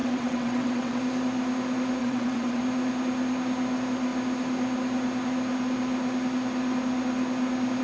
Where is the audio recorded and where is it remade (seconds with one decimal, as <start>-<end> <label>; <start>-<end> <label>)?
0.0-1.0 remade; 1.0-2.0 recorded; 2.0-2.6 remade; 2.6-7.8 recorded